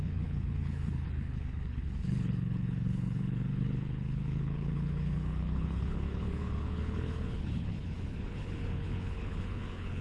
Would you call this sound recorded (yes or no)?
no